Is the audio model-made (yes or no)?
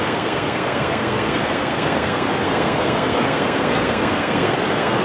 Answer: yes